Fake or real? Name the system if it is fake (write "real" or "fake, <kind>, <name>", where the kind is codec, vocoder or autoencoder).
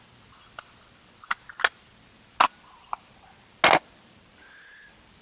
real